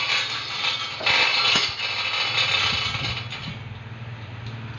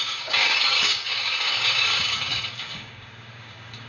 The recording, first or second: first